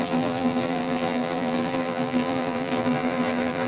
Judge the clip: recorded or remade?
remade